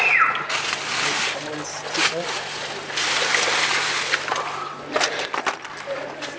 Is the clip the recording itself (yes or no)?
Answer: yes